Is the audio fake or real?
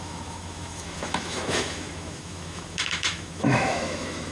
fake